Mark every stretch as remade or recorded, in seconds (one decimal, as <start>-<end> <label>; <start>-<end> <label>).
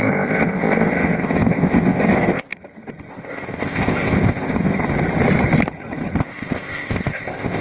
0.0-2.5 remade; 2.5-3.1 recorded; 3.1-4.8 remade; 4.8-6.2 recorded; 6.2-7.6 remade